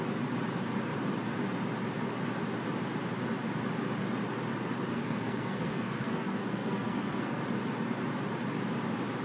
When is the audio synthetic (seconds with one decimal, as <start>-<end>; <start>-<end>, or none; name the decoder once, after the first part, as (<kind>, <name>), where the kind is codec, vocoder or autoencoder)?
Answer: 4.9-7.4 (codec, SNAC)